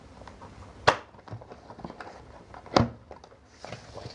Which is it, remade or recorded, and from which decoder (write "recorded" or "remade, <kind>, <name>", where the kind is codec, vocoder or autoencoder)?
recorded